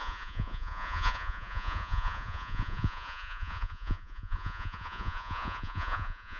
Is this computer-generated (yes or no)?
yes